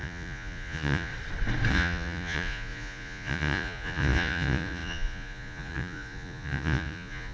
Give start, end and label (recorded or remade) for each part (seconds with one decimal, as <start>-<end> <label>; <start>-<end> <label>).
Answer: 0.0-1.1 remade; 1.1-1.7 recorded; 1.7-7.3 remade